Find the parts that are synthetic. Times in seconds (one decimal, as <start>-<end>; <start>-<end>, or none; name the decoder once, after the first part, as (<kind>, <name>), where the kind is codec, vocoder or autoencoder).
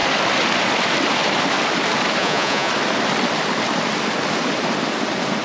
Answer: 2.2-2.7 (vocoder, Vocos)